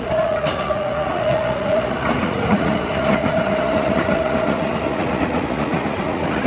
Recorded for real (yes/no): no